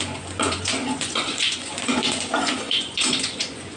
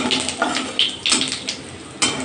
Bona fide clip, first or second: second